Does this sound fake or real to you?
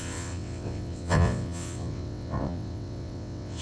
fake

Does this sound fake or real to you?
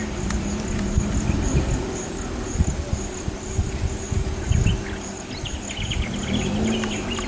real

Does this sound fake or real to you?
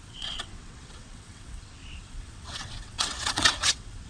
fake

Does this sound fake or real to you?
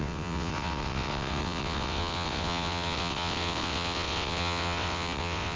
fake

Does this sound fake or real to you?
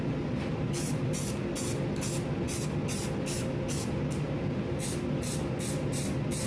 real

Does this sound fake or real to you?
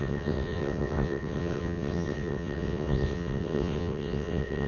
fake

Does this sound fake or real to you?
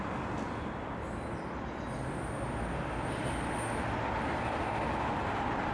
real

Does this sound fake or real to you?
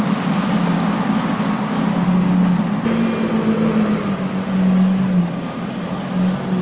real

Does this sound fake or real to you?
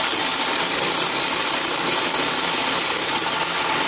real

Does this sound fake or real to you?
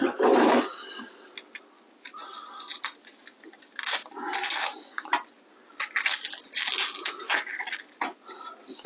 real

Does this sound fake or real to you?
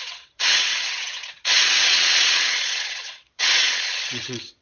fake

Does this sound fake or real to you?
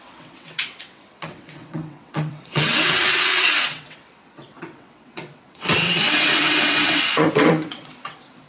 fake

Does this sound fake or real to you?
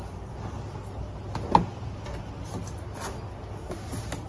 real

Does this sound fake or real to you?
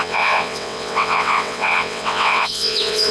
fake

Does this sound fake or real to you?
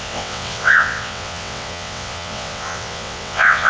fake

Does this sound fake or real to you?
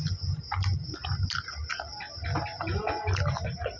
real